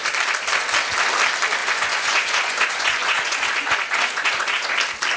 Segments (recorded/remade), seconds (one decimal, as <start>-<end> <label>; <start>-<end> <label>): 0.0-1.6 recorded; 1.6-4.7 remade; 4.7-5.2 recorded